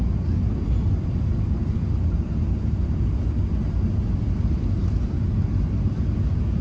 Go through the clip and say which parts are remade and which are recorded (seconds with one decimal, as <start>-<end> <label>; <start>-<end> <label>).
0.0-6.6 recorded